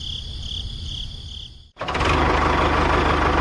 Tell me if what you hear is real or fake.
real